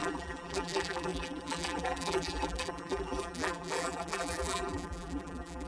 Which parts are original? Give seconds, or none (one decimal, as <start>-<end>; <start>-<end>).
none